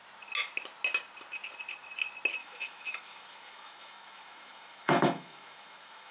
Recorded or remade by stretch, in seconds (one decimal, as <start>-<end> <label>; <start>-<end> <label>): 0.0-2.4 recorded; 2.4-6.1 remade